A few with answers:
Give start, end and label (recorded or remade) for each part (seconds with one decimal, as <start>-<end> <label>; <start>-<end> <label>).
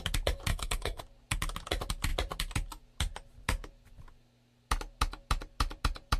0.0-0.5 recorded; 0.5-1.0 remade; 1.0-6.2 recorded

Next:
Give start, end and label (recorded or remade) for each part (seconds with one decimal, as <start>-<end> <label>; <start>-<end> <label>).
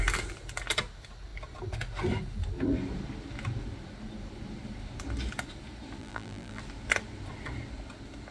0.0-6.0 recorded; 6.0-6.6 remade; 6.6-8.3 recorded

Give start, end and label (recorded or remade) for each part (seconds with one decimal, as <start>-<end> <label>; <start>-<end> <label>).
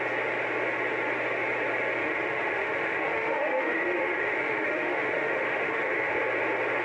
0.0-2.0 recorded; 2.0-6.1 remade; 6.1-6.8 recorded